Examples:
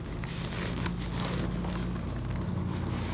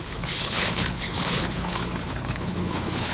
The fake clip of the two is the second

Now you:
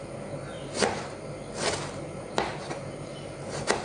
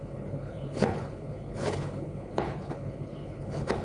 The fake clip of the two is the second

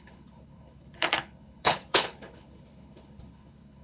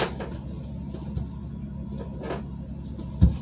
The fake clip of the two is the first